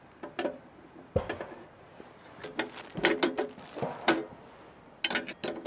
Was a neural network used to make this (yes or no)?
no